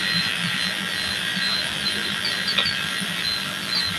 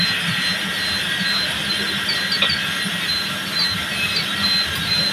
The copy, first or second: first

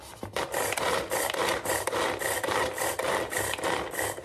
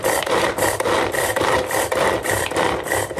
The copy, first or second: second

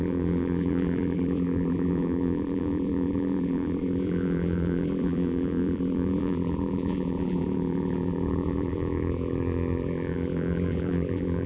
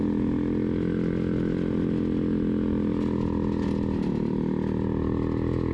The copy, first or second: first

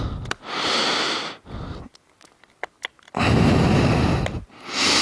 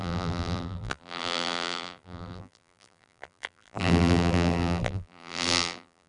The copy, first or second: second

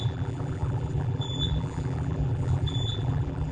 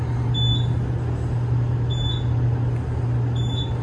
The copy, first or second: first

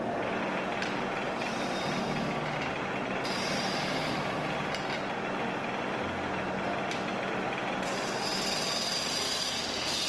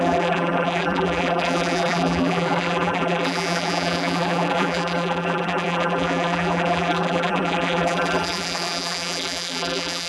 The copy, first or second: second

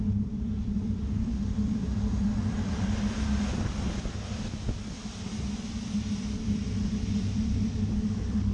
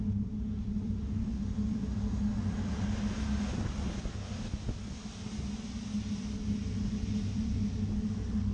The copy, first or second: first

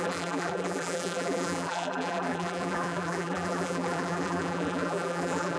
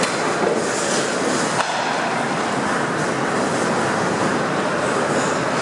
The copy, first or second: first